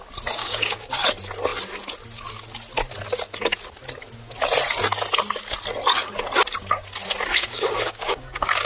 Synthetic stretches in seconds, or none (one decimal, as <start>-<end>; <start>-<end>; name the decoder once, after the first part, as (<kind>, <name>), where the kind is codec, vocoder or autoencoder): 0.4-0.9 (codec, DAC); 7.3-8.7